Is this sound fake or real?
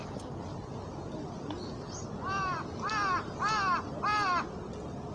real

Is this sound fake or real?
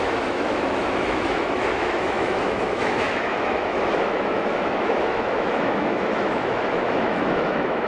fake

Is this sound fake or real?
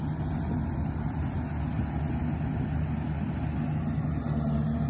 real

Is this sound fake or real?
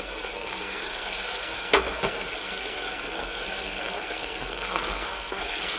fake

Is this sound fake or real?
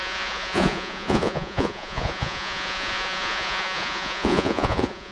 fake